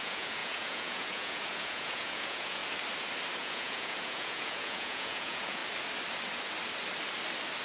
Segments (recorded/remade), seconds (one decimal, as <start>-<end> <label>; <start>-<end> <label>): 0.0-2.6 remade; 2.6-3.4 recorded; 3.4-5.6 remade; 5.6-7.6 recorded